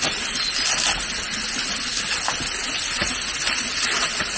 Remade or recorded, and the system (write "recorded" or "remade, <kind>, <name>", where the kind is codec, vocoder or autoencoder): recorded